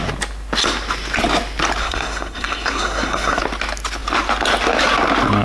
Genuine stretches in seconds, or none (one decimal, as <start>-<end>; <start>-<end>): 0.0-1.8; 3.4-5.4